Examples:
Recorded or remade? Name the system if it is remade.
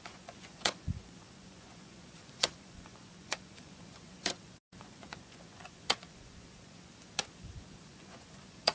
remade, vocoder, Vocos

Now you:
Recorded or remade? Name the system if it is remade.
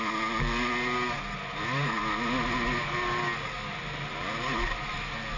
recorded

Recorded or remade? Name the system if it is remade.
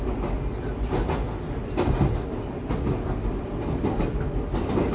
recorded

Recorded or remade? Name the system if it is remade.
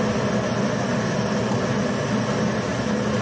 recorded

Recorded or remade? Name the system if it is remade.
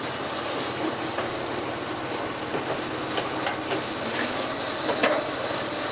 recorded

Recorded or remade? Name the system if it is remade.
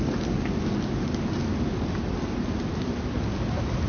recorded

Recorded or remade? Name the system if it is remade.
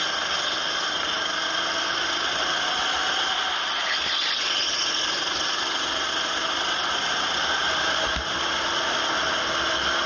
recorded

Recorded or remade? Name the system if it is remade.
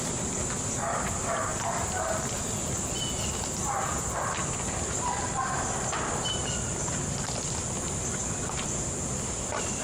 remade, vocoder, BigVGAN v2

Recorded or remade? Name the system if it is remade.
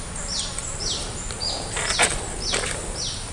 recorded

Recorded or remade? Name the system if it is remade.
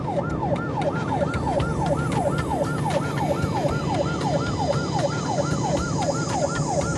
recorded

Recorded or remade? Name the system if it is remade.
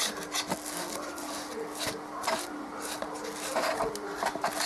recorded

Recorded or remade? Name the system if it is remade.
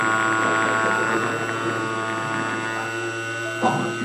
recorded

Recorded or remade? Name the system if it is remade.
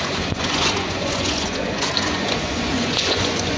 remade, vocoder, Vocos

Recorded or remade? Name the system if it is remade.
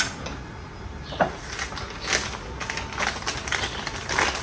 recorded